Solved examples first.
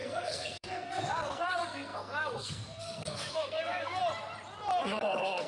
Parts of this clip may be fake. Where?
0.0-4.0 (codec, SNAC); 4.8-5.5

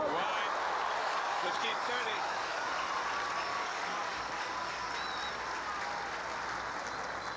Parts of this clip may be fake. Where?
1.0-2.7 (codec, DAC); 3.5-4.9

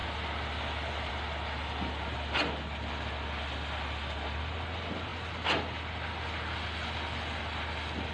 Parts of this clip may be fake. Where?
none